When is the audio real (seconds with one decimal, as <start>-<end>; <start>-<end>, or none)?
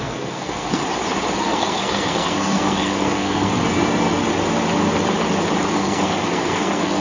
0.8-1.4; 3.5-5.7